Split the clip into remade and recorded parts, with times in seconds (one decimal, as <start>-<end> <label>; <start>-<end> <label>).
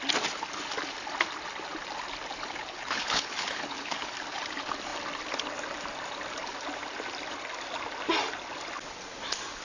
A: 0.0-2.6 recorded; 2.6-4.1 remade; 4.1-9.6 recorded